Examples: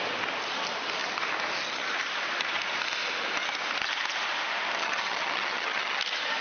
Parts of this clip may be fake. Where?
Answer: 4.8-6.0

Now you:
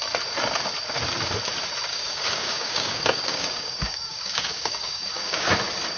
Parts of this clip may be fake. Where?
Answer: 1.9-5.5

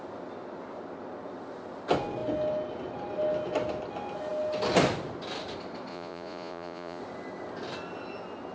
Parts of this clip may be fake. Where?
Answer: 5.9-7.0